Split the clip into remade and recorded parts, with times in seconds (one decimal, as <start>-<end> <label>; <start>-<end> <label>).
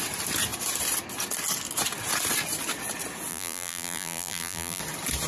0.0-3.3 recorded; 3.3-4.8 remade; 4.8-5.3 recorded